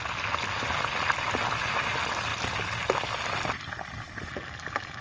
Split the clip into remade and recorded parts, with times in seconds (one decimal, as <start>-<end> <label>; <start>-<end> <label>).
0.0-5.0 recorded